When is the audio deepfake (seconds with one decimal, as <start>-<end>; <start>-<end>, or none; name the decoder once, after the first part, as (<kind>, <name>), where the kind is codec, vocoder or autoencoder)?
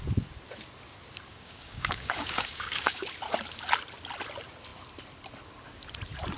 1.3-3.1 (codec, DAC)